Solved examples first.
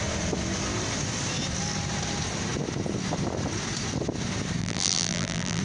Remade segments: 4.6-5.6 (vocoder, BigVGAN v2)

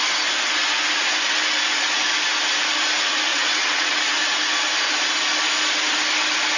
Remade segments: 3.3-4.0 (vocoder, WaveNeXt)

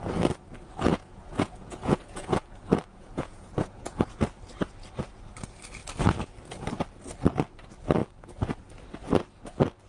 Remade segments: 0.9-2.4 (vocoder, Vocos); 2.9-4.2

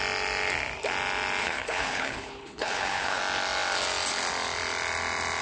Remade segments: 1.4-3.2 (codec, HILCodec)

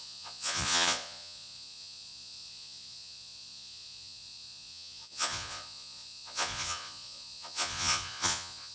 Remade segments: 0.0-8.7 (vocoder, Vocos)